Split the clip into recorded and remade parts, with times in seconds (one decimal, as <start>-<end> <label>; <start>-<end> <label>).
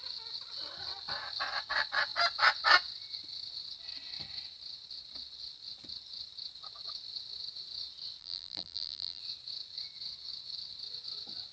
0.0-8.2 recorded; 8.2-9.2 remade; 9.2-11.5 recorded